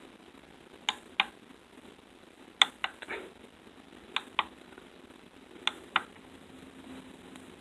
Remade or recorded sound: recorded